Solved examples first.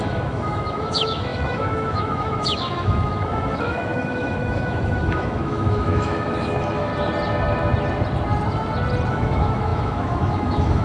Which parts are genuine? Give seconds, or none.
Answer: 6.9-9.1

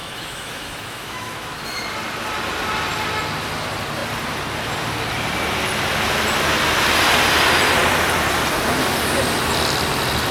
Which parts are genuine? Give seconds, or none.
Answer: 1.8-10.3

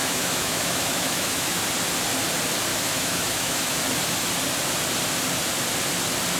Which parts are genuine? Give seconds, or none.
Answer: 1.6-2.7; 3.8-6.4

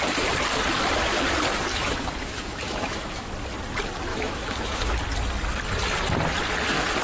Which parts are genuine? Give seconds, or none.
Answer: 0.0-1.7; 3.3-4.1; 4.9-7.0

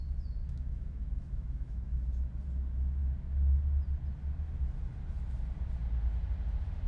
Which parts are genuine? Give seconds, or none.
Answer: 0.0-0.4; 2.1-6.9